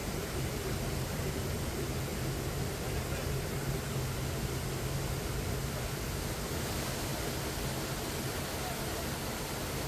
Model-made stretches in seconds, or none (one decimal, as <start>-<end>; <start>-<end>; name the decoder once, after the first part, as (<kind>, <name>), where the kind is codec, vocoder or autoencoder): 0.0-1.3 (vocoder, BigVGAN v2)